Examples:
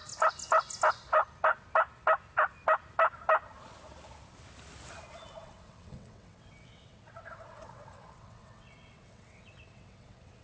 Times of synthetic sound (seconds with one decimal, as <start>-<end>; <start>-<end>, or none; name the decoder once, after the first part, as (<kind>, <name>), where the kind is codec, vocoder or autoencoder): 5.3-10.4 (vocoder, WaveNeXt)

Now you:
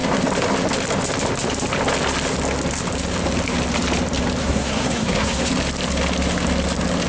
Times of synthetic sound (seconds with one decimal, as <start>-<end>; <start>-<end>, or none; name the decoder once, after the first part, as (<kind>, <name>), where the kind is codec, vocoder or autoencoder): 4.4-5.5 (codec, SNAC)

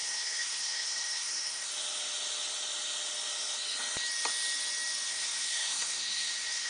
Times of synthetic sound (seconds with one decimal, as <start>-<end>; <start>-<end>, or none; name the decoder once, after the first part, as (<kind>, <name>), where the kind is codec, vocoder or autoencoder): 0.0-1.7 (codec, SNAC); 5.1-6.7

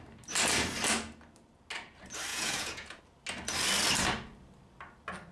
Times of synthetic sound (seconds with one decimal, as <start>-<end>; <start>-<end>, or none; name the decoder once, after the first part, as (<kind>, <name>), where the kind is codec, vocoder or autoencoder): 2.3-3.0 (vocoder, Vocos)

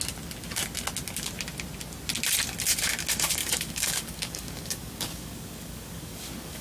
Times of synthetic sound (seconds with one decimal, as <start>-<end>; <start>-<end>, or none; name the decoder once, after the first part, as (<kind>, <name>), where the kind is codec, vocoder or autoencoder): 3.4-6.6 (codec, DAC)

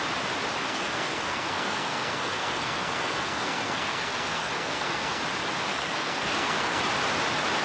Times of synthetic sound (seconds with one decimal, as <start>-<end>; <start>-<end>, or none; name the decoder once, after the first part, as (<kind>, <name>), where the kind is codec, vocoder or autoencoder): 0.6-5.2 (codec, SNAC); 5.7-6.8